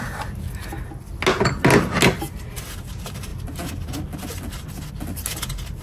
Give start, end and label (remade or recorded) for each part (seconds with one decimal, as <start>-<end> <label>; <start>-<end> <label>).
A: 0.0-5.8 recorded